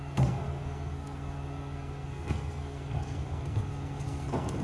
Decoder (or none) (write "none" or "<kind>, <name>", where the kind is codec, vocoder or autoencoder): codec, SNAC